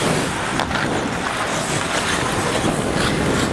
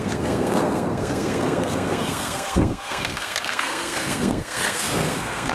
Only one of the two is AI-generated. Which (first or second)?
second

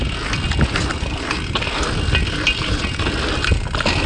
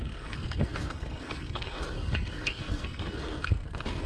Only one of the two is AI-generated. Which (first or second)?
second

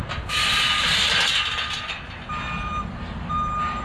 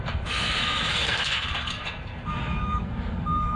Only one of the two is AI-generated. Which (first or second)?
second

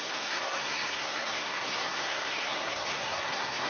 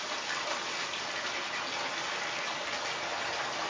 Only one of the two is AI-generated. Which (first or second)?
first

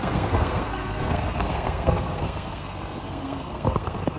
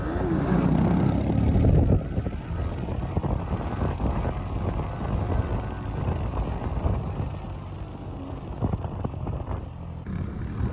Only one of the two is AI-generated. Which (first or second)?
first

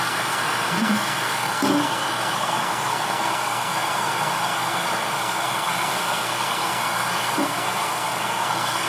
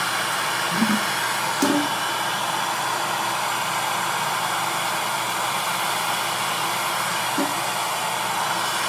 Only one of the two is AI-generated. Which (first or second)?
first